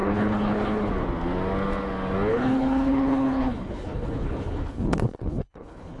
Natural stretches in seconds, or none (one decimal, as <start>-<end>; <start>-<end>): 0.9-2.3